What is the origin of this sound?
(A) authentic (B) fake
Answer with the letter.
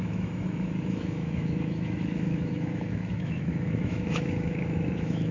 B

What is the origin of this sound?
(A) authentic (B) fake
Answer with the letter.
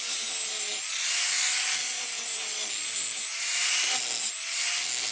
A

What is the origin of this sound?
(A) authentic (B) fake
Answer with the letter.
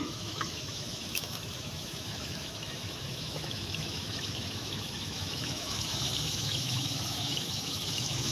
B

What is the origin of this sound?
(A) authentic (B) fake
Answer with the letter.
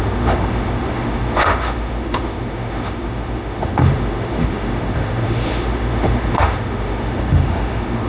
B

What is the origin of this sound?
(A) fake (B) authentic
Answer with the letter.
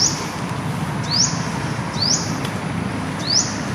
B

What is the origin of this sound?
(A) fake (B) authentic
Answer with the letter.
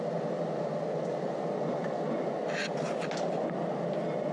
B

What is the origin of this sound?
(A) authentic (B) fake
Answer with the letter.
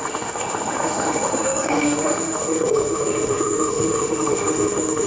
B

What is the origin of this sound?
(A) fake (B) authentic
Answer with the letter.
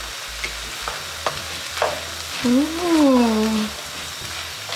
B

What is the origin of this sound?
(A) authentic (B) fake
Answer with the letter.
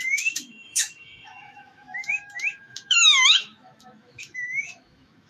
B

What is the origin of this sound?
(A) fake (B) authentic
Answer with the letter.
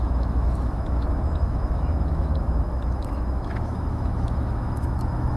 A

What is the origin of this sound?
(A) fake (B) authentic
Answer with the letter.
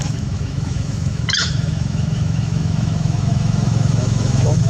A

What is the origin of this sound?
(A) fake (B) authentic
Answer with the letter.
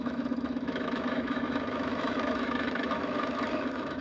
A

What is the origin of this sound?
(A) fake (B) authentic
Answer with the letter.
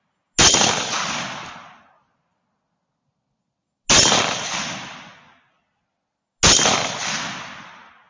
B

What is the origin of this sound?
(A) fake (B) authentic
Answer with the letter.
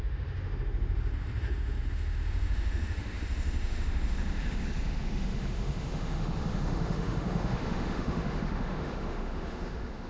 A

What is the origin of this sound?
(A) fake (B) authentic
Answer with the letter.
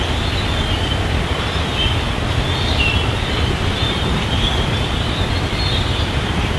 B